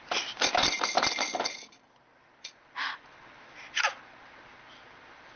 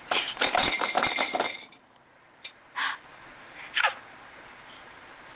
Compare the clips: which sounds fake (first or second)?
second